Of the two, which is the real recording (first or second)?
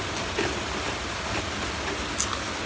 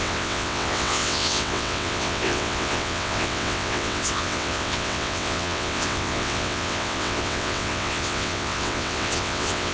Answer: first